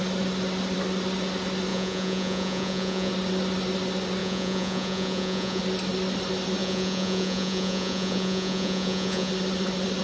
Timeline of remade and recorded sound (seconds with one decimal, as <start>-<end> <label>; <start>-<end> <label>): 0.0-1.7 recorded; 1.7-3.1 remade; 3.1-4.2 recorded; 4.2-5.6 remade; 5.6-6.6 recorded; 6.6-9.3 remade; 9.3-10.0 recorded